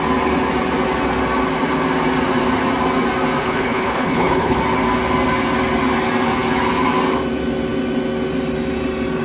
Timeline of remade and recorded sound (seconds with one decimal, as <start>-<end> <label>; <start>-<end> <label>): 0.0-3.4 recorded; 3.4-4.6 remade; 4.6-9.2 recorded